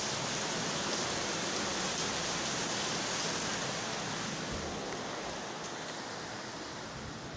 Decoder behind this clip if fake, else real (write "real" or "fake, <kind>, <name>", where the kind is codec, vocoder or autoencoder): real